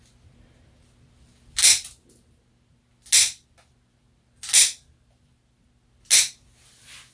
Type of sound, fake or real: real